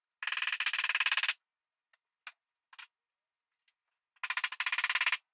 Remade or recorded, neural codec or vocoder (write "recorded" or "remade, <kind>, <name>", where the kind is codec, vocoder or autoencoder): recorded